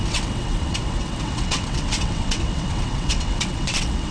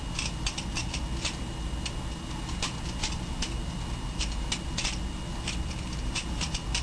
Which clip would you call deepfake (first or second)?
first